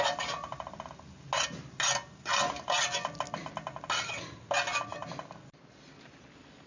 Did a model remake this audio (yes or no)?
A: no